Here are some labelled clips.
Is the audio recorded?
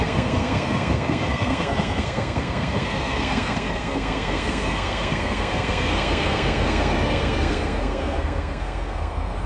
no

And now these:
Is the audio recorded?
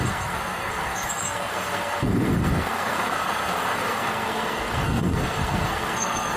no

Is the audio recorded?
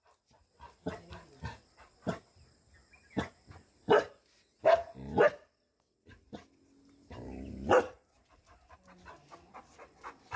yes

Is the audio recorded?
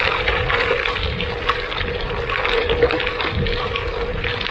no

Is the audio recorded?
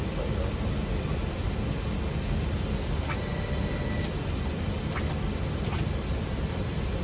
yes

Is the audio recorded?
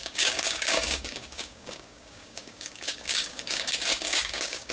no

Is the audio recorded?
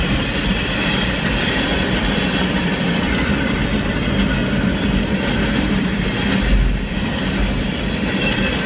no